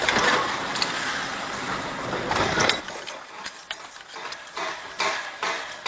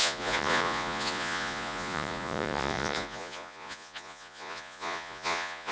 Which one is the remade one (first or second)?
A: second